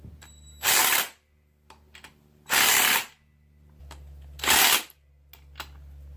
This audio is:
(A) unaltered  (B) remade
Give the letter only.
A